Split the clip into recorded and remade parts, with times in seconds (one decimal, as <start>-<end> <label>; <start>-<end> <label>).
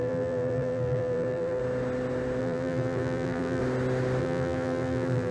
0.0-1.6 remade; 1.6-2.4 recorded; 2.4-3.6 remade; 3.6-4.2 recorded; 4.2-5.3 remade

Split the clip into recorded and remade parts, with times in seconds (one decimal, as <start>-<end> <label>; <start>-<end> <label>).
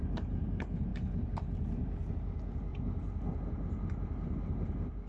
0.0-2.7 recorded; 2.7-3.5 remade; 3.5-5.1 recorded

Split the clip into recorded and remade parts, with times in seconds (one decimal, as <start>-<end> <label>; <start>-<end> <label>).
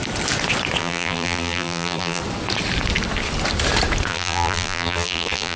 0.0-0.8 recorded; 0.8-2.2 remade; 2.2-4.1 recorded; 4.1-5.6 remade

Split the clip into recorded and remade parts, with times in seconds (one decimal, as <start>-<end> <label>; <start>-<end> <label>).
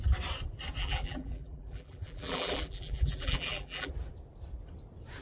0.0-0.8 recorded; 0.8-3.9 remade; 3.9-5.2 recorded